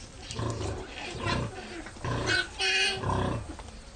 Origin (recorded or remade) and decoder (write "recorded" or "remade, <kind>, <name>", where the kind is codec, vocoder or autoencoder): recorded